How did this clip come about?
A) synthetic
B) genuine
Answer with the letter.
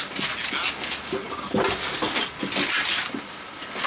B